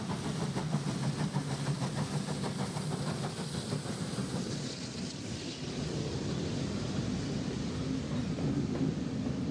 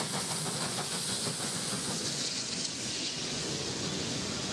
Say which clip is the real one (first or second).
first